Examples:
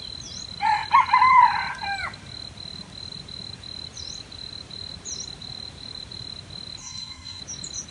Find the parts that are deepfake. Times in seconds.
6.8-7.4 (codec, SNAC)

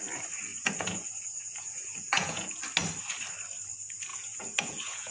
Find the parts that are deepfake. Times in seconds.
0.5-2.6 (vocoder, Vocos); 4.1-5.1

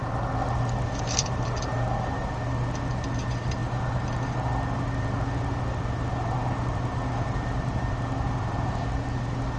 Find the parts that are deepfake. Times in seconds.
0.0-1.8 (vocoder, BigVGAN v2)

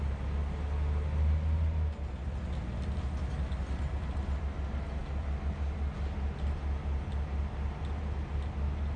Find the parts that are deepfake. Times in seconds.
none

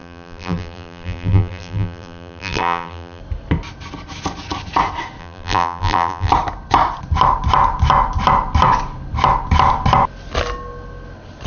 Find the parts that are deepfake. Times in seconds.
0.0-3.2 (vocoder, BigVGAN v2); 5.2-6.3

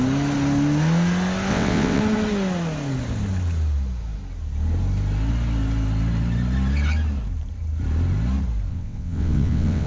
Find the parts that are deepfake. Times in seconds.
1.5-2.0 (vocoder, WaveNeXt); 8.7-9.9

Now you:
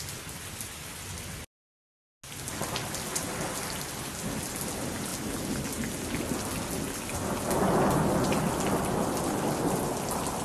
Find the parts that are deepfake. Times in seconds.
none